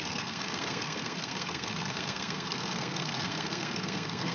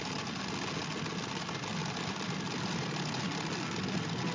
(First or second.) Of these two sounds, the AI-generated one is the first